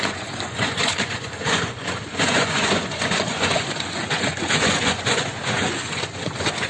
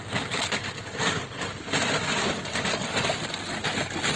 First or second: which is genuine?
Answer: second